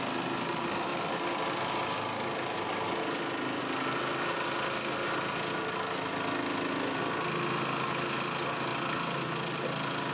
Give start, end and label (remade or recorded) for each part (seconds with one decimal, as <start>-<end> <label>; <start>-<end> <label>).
0.0-8.7 recorded; 8.7-10.1 remade